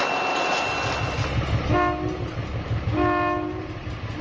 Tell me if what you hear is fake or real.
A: real